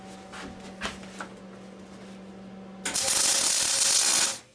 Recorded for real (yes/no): yes